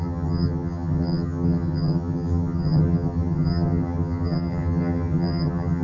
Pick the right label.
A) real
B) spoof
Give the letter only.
B